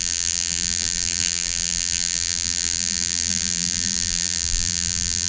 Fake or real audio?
fake